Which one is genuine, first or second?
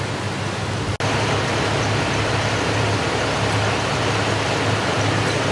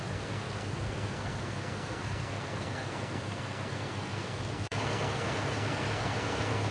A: first